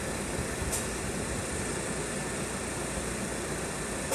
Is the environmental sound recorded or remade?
recorded